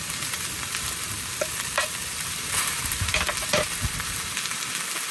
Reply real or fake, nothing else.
fake